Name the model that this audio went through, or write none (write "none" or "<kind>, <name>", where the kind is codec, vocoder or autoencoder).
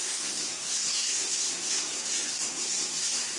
codec, SNAC